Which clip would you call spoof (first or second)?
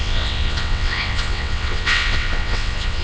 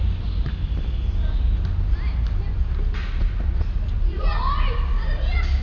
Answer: first